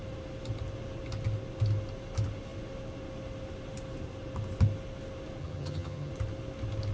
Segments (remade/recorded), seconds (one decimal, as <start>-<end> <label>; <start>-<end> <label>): 0.0-5.4 recorded; 5.4-6.1 remade; 6.1-6.9 recorded